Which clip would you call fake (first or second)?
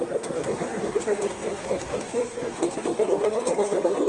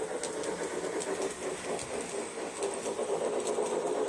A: first